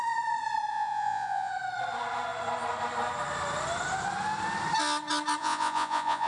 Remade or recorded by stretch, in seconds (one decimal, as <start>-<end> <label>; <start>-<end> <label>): 0.0-0.7 recorded; 0.7-1.5 remade; 1.5-5.4 recorded; 5.4-6.3 remade